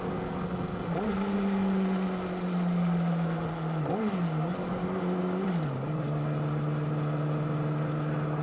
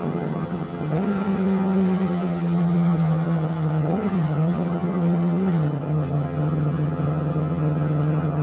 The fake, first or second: second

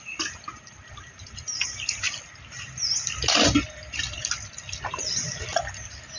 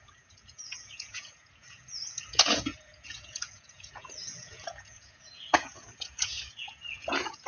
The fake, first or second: second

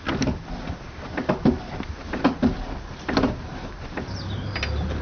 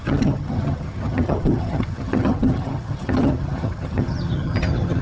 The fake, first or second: second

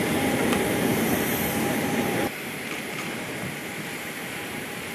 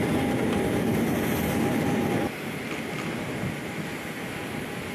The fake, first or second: first